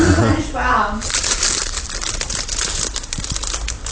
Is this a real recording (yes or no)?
yes